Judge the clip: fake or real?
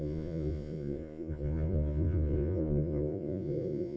fake